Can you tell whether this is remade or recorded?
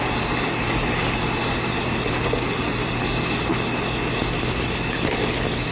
recorded